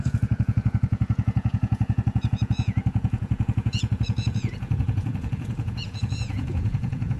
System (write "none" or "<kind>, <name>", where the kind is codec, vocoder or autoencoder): vocoder, Vocos